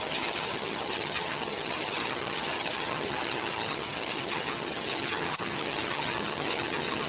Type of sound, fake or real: fake